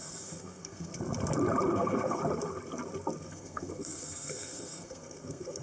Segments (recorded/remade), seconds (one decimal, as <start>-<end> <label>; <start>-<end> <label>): 0.0-0.9 remade; 0.9-1.7 recorded; 1.7-2.2 remade; 2.2-3.2 recorded; 3.2-5.6 remade